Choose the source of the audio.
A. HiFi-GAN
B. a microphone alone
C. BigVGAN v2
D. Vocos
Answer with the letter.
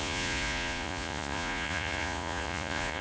D